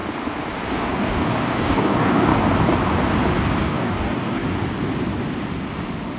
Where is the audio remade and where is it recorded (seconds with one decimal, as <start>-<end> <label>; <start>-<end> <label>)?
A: 0.0-0.7 recorded; 0.7-2.3 remade; 2.3-3.6 recorded; 3.6-4.4 remade; 4.4-6.2 recorded